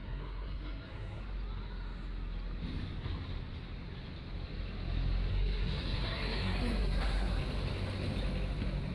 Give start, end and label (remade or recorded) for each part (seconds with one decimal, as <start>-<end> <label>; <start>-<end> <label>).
0.0-1.2 remade; 1.2-5.3 recorded; 5.3-7.4 remade; 7.4-8.9 recorded